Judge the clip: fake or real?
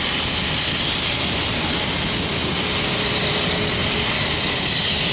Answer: real